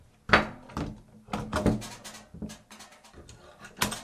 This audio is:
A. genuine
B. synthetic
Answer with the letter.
A